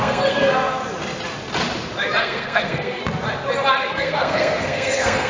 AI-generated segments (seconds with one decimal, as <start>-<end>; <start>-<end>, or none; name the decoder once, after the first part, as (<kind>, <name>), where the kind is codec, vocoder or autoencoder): 0.0-0.8 (codec, SNAC); 2.2-3.0; 3.9-5.3